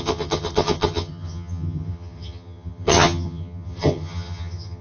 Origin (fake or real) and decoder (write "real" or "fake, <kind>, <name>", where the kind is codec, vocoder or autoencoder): fake, vocoder, HiFi-GAN